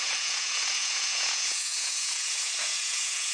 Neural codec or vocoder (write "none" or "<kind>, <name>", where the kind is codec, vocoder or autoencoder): vocoder, Vocos